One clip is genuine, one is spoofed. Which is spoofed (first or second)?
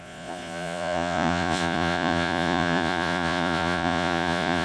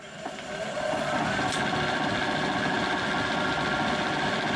first